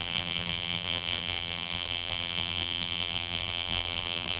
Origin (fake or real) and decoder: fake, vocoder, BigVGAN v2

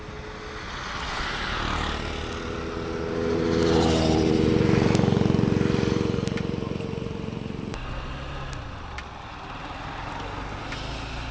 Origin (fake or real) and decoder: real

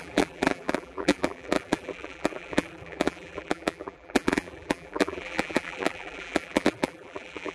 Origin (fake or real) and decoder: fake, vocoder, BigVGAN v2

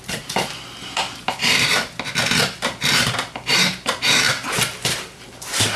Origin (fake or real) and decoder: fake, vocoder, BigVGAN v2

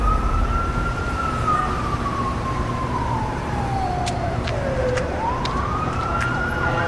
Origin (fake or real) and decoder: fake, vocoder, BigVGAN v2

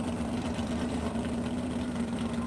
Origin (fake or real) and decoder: fake, vocoder, BigVGAN v2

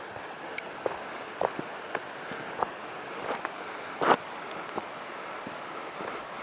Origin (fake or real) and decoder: real